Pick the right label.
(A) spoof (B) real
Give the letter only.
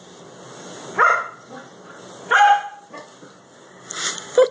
B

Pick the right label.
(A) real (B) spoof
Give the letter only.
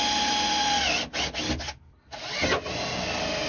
A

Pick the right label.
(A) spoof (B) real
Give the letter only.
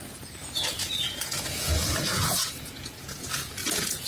A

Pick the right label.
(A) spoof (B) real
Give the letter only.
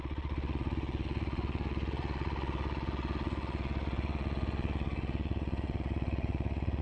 A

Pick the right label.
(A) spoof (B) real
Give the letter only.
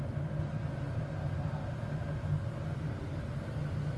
B